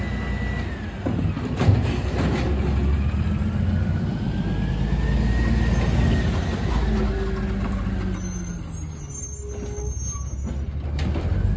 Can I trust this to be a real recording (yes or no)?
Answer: yes